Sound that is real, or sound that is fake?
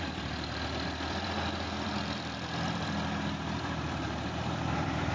fake